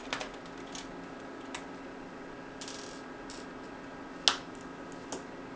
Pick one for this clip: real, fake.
real